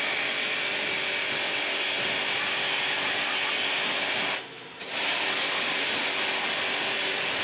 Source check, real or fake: real